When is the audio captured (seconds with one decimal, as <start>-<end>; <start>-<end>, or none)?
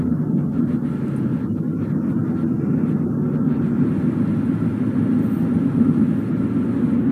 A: 0.0-7.1